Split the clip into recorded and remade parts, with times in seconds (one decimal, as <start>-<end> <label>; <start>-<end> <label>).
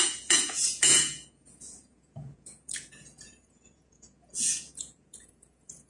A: 0.0-5.9 remade